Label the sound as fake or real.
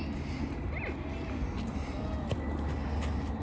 real